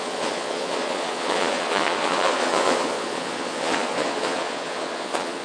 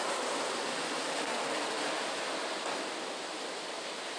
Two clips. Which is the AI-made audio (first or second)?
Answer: first